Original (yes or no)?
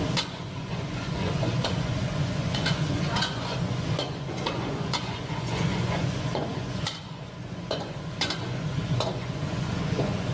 no